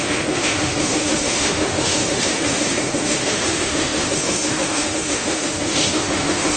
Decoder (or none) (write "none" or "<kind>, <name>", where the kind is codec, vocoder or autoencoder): autoencoder, DAC-VAE